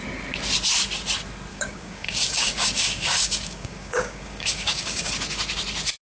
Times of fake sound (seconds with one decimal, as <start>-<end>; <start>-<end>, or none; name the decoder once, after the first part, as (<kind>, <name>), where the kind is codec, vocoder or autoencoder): 1.5-5.1 (codec, DAC)